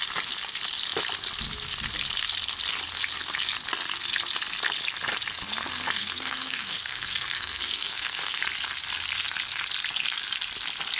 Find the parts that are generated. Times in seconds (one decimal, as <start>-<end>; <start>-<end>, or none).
6.0-8.4